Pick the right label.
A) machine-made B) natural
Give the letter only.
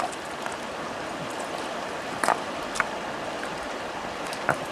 B